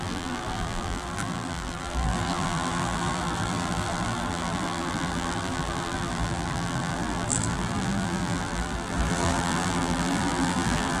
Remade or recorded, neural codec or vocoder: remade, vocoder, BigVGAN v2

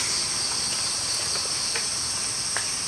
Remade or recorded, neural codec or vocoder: recorded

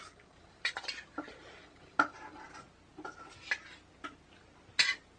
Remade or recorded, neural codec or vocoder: recorded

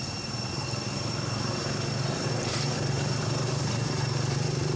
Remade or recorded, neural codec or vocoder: remade, vocoder, BigVGAN v2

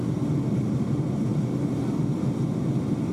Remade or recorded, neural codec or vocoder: recorded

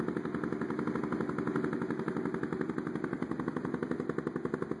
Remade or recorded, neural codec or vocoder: recorded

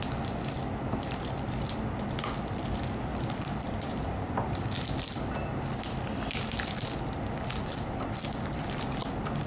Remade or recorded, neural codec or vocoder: remade, vocoder, BigVGAN v2